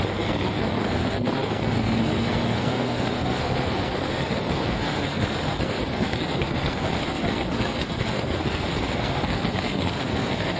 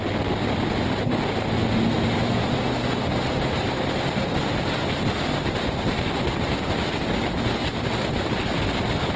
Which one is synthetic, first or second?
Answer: first